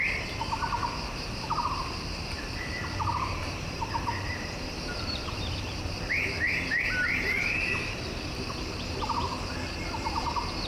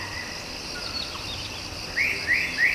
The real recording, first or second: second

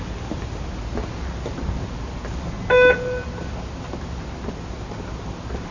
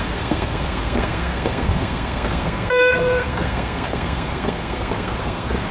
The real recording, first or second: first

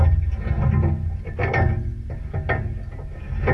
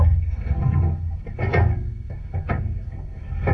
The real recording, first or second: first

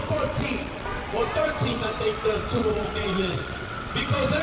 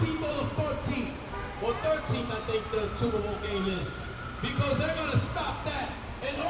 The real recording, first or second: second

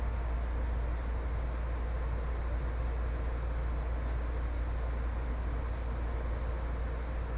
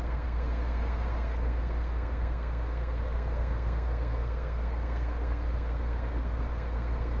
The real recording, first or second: first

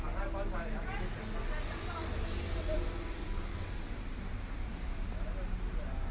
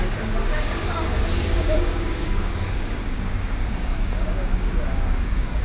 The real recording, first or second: first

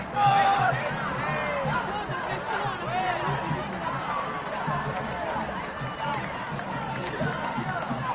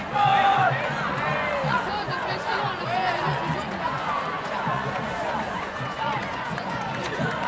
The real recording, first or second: first